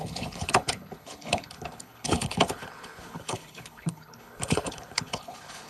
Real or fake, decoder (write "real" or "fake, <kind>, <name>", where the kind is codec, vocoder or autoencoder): fake, codec, HILCodec